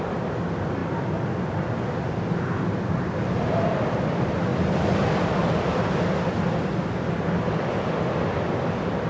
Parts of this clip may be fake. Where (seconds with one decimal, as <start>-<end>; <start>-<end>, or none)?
none